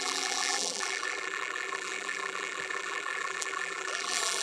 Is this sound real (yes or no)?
no